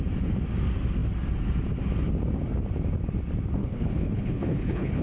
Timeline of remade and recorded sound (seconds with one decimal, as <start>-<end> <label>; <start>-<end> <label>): 0.0-3.6 recorded; 3.6-5.0 remade